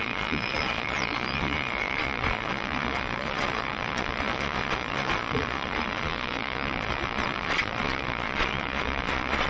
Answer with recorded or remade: remade